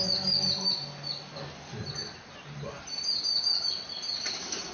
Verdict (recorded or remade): recorded